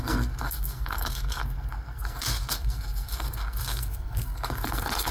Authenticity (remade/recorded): remade